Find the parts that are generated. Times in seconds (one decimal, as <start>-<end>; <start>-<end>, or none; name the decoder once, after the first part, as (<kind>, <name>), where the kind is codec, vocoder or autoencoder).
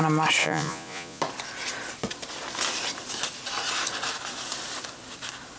0.4-1.2 (vocoder, Vocos)